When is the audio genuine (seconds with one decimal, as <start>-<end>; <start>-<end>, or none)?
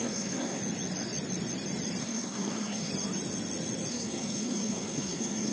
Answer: 0.6-2.0; 2.9-3.9